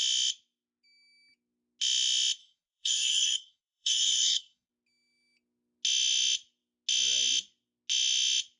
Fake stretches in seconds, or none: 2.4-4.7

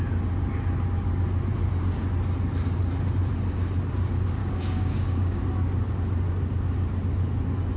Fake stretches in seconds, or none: 4.4-5.4

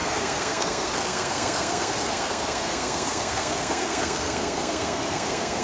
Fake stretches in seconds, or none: 0.0-5.6

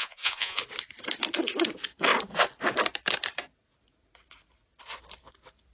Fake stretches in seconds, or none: 0.0-0.6